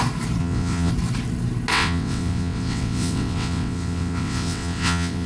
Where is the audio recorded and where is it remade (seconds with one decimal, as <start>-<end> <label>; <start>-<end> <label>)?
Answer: 0.0-0.4 recorded; 0.4-0.9 remade; 0.9-1.7 recorded; 1.7-5.3 remade